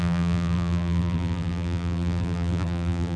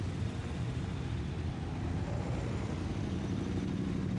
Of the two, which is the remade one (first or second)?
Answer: first